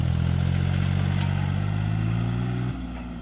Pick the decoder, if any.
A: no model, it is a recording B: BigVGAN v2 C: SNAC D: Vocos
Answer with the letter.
A